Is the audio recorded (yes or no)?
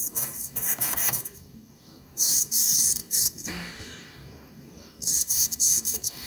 no